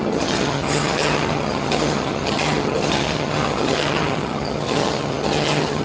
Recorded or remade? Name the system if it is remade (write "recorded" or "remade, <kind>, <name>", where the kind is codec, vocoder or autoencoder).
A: remade, vocoder, HiFi-GAN